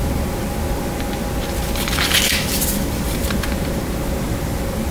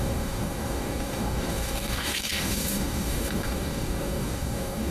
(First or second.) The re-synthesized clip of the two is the second